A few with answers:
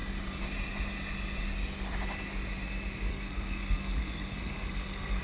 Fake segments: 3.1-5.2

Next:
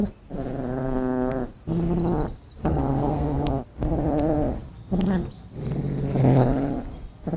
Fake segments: 0.8-1.3; 2.7-3.5

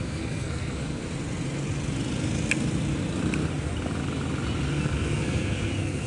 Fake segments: 0.0-1.0; 4.7-6.1

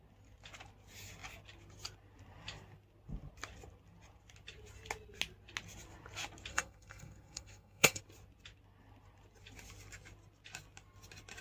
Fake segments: 6.5-8.0

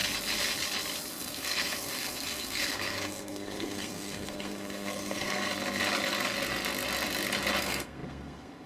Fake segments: 1.1-5.5; 7.6-8.7

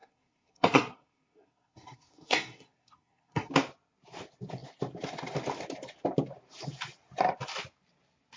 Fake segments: 0.0-3.5

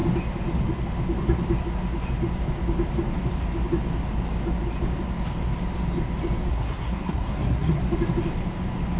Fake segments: 6.5-7.8

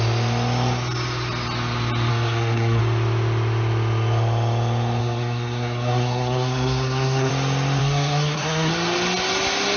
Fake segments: 2.1-2.8; 5.0-7.3; 7.8-8.7